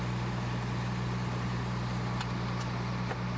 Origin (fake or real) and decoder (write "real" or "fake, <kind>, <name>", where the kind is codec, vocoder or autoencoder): real